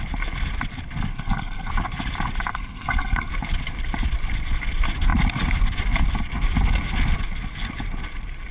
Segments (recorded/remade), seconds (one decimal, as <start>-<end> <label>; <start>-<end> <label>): 0.0-1.1 recorded; 1.1-1.7 remade; 1.7-2.5 recorded; 2.5-3.3 remade; 3.3-8.5 recorded